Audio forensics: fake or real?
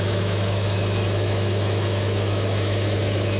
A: fake